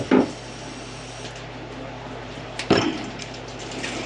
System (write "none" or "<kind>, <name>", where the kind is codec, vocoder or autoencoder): none